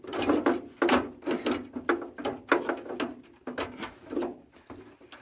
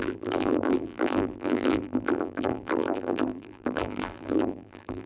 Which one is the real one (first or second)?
first